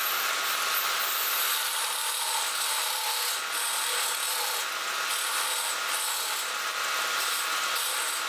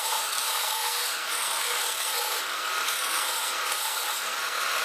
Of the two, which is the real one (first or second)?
first